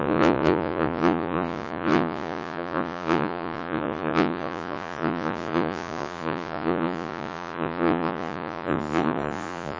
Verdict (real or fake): fake